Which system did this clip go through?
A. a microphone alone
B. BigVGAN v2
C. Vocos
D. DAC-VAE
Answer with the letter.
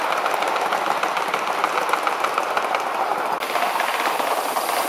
A